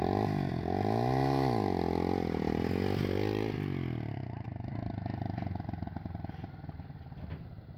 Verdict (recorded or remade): recorded